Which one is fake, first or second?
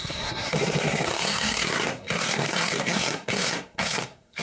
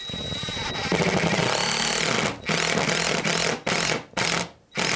first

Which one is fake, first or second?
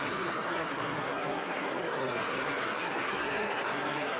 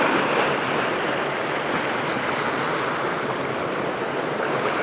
first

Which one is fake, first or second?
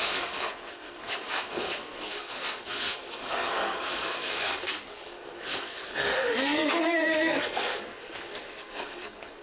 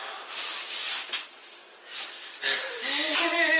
first